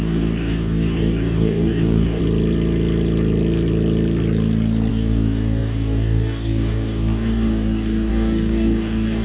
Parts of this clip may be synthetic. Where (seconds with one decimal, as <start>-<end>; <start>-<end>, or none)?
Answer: 0.0-2.2; 4.9-9.2